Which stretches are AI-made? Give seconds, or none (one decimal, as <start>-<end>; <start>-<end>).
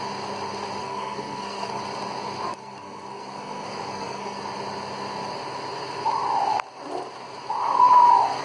0.8-1.8; 2.5-4.4